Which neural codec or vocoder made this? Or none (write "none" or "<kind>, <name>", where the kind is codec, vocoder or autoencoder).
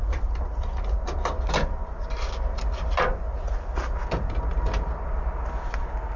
none